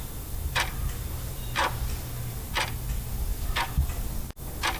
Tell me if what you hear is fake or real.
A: real